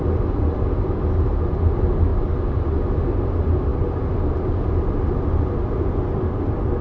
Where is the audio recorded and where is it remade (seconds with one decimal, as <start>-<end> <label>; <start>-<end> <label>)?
0.0-6.8 recorded